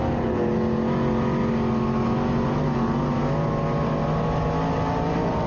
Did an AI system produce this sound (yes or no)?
no